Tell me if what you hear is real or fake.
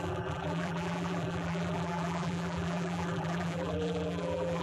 fake